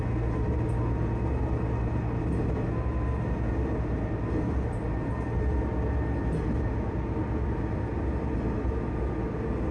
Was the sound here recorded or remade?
recorded